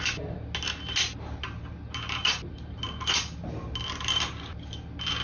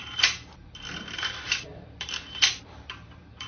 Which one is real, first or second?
first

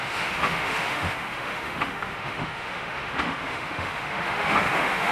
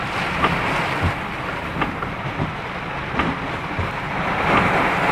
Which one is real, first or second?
second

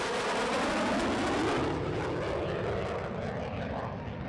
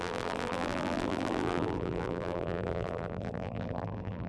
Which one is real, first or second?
first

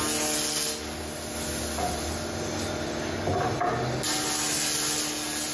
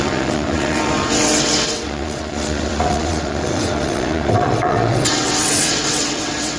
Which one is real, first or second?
first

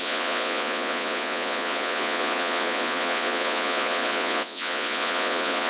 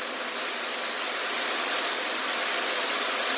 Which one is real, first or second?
second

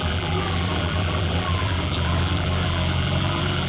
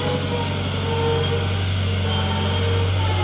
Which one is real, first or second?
second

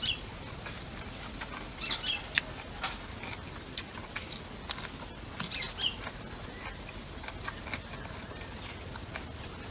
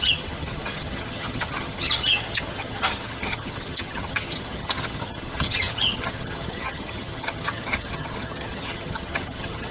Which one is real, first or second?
first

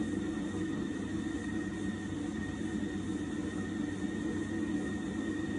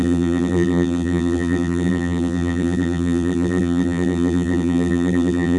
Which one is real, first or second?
first